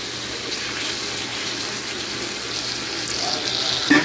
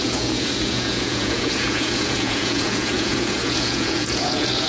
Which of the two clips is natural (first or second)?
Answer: first